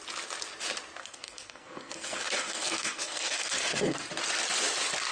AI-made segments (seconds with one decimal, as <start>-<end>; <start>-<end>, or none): 1.0-4.1